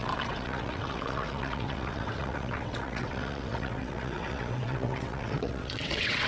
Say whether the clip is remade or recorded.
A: remade